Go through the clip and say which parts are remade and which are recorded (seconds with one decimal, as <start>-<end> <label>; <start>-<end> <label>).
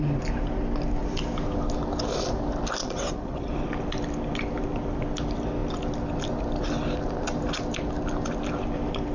0.0-2.8 recorded; 2.8-3.5 remade; 3.5-9.1 recorded